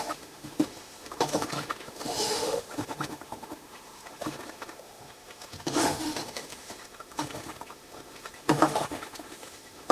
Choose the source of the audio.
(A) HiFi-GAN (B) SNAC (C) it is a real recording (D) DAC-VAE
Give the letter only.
D